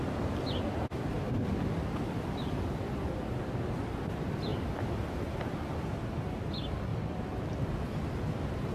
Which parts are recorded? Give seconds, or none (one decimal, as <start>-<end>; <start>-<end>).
0.0-6.9